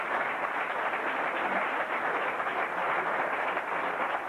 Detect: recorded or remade recorded